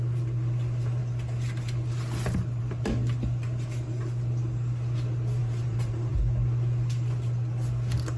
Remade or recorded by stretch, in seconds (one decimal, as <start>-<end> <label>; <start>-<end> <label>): 0.0-5.4 recorded; 5.4-6.1 remade; 6.1-8.2 recorded